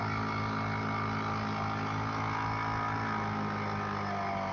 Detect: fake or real real